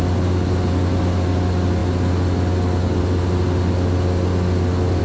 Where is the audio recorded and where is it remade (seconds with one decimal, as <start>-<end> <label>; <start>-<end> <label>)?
0.0-5.0 recorded